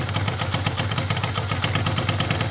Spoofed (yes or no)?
no